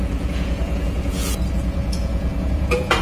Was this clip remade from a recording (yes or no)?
yes